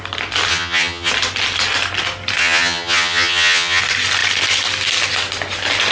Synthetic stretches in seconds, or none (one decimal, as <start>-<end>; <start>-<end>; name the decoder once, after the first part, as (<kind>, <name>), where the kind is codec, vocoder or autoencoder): 0.5-1.1 (vocoder, HiFi-GAN); 2.4-3.8